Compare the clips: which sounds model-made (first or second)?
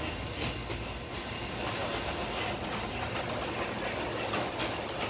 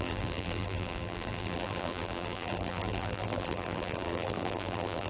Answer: second